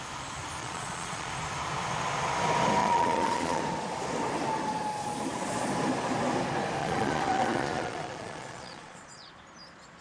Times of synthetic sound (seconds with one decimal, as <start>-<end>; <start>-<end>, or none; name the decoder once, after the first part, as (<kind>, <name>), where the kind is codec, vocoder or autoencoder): 0.6-1.3 (vocoder, Vocos); 2.8-3.6; 6.8-9.3